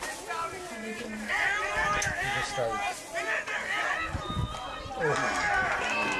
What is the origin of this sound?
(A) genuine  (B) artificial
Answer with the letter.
A